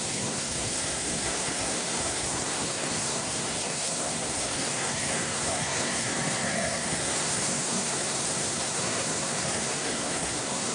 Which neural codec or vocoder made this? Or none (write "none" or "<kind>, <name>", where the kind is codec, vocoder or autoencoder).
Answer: codec, SNAC